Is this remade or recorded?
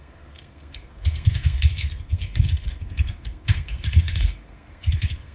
remade